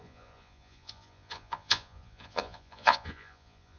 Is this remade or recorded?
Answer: remade